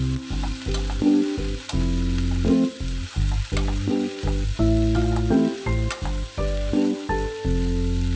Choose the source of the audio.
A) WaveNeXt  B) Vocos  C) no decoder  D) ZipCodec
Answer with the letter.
C